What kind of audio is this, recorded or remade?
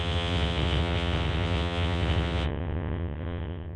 remade